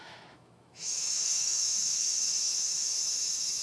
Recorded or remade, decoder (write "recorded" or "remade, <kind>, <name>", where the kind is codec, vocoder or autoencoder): remade, autoencoder, DAC-VAE